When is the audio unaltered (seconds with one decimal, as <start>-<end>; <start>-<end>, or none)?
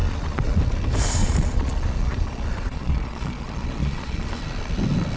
0.6-1.2; 4.3-5.2